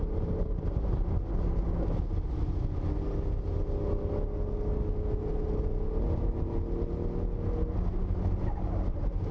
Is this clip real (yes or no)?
yes